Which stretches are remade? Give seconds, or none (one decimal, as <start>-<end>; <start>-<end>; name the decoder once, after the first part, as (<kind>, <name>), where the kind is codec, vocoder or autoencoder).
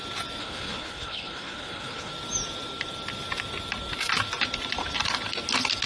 0.4-2.1 (codec, HILCodec)